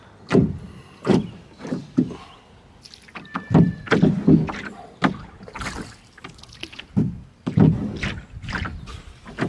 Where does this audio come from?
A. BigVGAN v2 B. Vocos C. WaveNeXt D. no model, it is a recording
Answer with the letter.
D